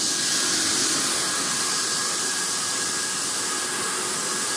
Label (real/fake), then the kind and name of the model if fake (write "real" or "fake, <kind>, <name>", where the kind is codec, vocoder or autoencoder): real